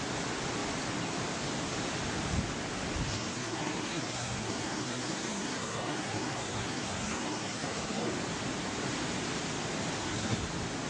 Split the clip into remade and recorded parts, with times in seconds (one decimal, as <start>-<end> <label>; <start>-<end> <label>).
0.0-3.1 recorded; 3.1-8.1 remade; 8.1-10.0 recorded; 10.0-10.5 remade; 10.5-10.9 recorded